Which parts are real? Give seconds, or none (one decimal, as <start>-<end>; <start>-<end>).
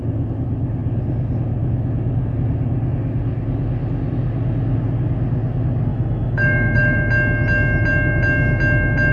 0.0-5.9; 7.1-9.1